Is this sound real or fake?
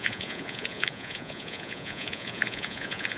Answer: fake